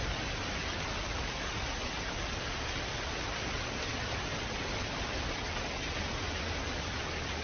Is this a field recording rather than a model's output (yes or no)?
yes